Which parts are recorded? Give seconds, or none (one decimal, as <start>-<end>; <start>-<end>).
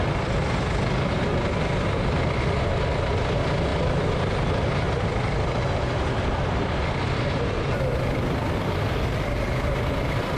none